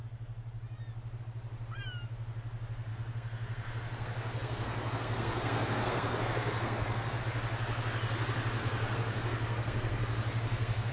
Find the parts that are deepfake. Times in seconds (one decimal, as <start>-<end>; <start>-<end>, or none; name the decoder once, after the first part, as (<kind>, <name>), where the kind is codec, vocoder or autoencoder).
2.9-7.2 (codec, SNAC); 8.6-10.9